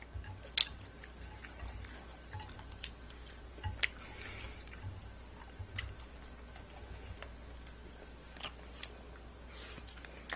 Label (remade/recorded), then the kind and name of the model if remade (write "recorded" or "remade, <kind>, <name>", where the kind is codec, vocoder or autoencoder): recorded